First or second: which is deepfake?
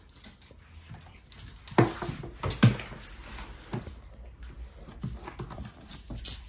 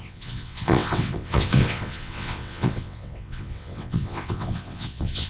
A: second